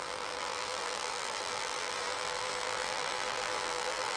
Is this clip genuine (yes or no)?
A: no